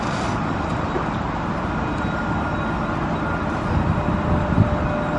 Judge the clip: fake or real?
real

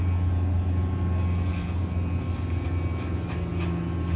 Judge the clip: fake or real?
real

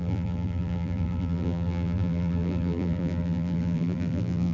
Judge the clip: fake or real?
fake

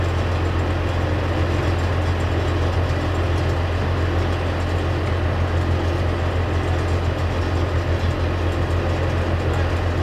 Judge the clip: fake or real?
real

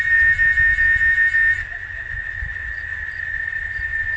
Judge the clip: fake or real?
real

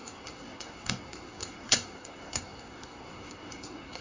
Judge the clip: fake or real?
fake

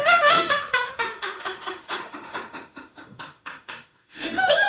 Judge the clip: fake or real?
fake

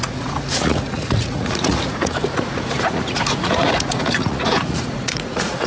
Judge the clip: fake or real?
fake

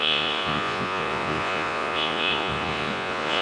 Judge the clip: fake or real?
fake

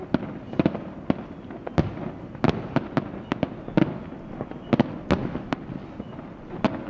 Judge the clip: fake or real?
real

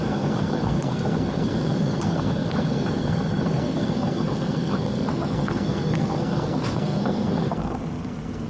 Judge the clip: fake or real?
fake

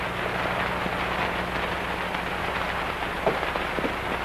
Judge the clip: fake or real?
real